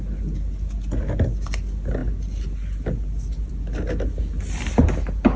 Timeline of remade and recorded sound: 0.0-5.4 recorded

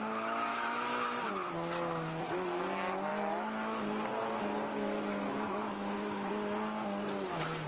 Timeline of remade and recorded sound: 0.0-0.5 recorded; 0.5-1.3 remade; 1.3-3.1 recorded; 3.1-3.8 remade; 3.8-4.7 recorded; 4.7-6.3 remade; 6.3-7.7 recorded

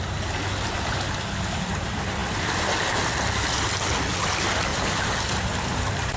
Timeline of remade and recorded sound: 0.0-4.7 recorded; 4.7-6.2 remade

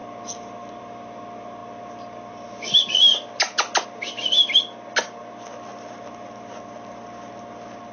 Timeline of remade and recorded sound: 0.0-7.9 recorded

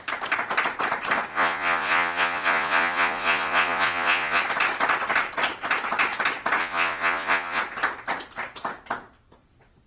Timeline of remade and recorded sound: 0.0-1.3 recorded; 1.3-4.4 remade; 4.4-6.6 recorded; 6.6-7.6 remade; 7.6-9.9 recorded